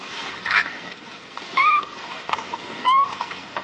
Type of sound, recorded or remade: remade